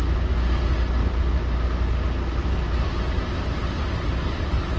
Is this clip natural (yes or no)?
yes